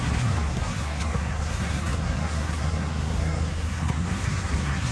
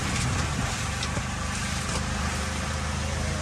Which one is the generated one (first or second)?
first